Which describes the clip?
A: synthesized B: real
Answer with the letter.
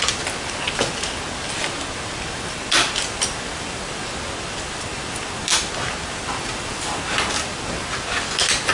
B